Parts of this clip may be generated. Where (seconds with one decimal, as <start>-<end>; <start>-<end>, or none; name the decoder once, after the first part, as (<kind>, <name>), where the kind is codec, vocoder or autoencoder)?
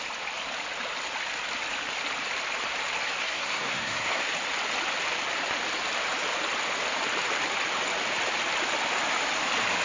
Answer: 3.2-4.2 (codec, SNAC)